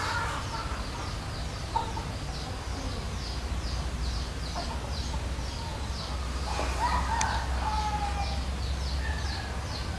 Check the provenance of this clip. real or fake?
real